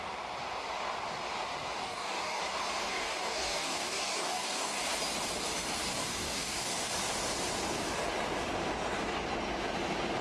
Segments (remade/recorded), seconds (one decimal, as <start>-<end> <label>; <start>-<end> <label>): 0.0-1.8 recorded; 1.8-2.4 remade; 2.4-2.8 recorded; 2.8-4.8 remade; 4.8-5.8 recorded; 5.8-6.9 remade; 6.9-10.2 recorded